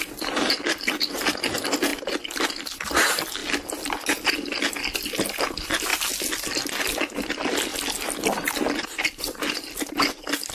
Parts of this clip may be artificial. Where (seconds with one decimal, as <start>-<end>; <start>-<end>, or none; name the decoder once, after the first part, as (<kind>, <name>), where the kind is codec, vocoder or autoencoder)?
none